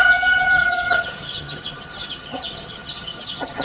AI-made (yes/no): yes